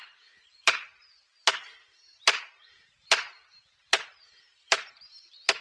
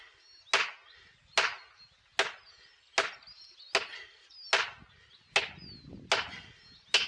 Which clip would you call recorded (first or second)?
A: second